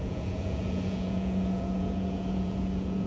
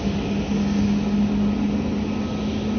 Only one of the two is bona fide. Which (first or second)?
second